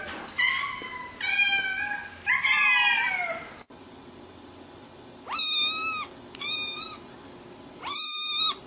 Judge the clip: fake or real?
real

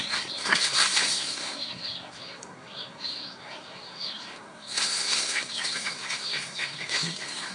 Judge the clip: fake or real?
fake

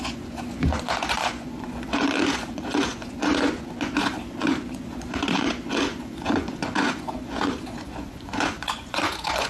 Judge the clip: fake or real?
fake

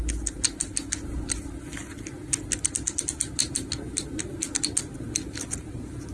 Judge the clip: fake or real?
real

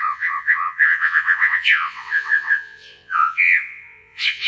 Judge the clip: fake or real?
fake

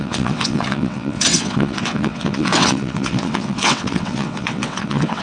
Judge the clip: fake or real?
fake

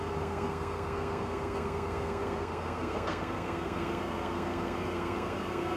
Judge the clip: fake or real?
fake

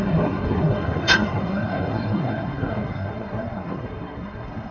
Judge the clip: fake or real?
fake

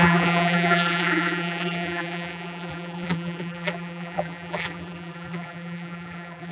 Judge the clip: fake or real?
fake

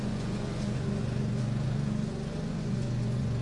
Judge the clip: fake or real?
fake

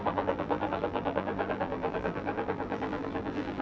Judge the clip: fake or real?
fake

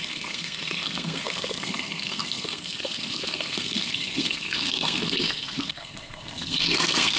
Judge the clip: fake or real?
fake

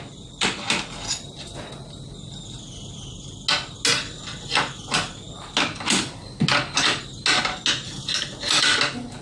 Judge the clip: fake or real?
real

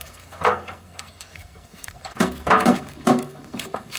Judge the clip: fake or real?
fake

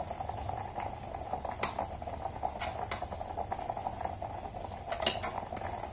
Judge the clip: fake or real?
real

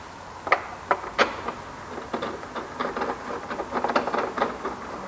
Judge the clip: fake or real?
real